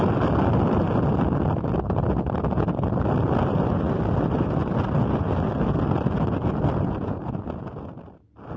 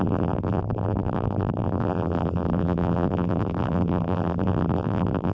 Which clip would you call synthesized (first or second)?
second